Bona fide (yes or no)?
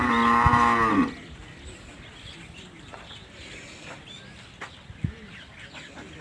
yes